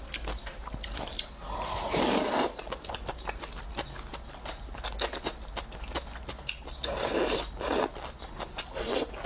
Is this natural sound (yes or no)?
yes